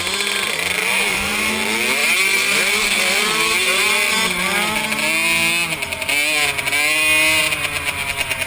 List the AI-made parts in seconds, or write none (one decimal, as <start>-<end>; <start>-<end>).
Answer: 0.8-1.5